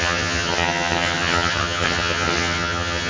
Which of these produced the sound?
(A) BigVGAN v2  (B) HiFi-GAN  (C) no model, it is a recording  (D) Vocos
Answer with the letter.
B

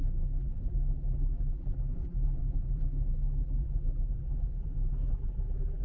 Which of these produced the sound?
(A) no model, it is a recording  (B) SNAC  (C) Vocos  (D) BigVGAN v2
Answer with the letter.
D